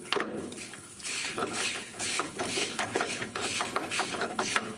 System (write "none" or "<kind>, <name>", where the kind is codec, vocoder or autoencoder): codec, HILCodec